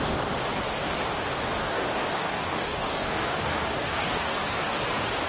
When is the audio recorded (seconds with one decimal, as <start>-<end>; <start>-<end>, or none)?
0.0-1.6; 4.8-5.3

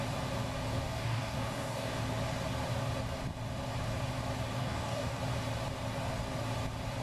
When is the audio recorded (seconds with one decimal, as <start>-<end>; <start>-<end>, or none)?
0.0-0.7; 2.0-4.6; 5.2-7.0

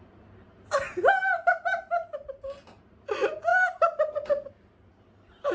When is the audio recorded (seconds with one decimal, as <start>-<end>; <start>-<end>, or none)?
0.0-5.5

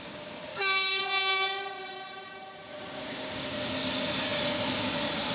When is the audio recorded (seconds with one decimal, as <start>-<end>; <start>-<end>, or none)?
0.0-0.5; 1.0-2.7; 3.5-5.3